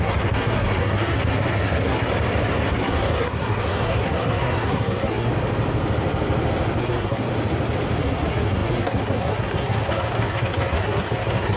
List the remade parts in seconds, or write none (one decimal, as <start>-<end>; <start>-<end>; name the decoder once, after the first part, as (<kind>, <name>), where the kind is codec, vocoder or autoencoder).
0.0-2.1 (codec, SNAC); 2.7-5.3; 6.8-7.3; 8.0-11.6